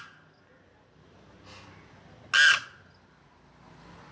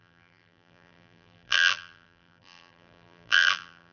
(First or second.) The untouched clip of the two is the first